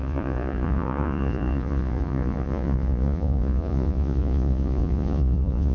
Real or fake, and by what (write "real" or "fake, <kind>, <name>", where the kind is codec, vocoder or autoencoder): fake, vocoder, Vocos